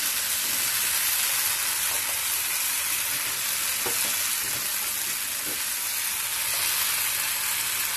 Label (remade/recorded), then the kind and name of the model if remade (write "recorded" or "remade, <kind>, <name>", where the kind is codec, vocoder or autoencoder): recorded